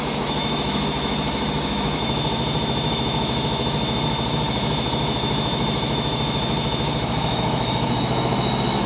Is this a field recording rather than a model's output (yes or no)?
no